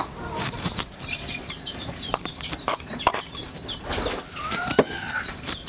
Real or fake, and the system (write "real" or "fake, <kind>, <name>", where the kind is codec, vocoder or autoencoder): fake, vocoder, BigVGAN v2